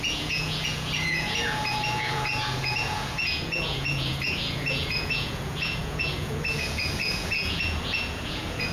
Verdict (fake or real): fake